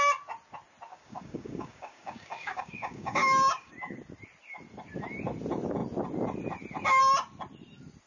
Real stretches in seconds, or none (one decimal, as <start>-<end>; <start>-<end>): 0.0-0.9; 4.0-8.1